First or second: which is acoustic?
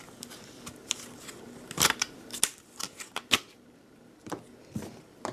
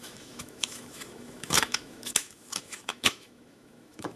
first